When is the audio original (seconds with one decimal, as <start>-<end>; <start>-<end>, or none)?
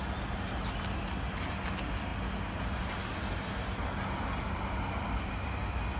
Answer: 0.0-6.0